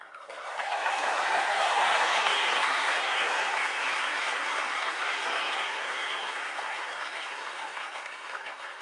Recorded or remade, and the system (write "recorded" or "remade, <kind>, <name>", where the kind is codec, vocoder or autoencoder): remade, codec, SNAC